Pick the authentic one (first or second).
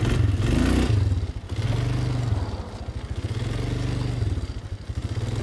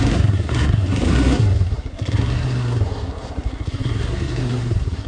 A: first